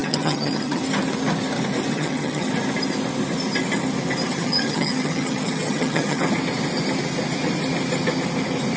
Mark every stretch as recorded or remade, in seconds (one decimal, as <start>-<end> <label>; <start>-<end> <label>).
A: 0.0-0.8 remade; 0.8-1.9 recorded; 1.9-2.5 remade; 2.5-4.3 recorded; 4.3-6.2 remade; 6.2-8.8 recorded